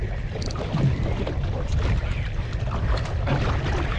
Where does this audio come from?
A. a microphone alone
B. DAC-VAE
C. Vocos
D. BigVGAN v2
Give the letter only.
A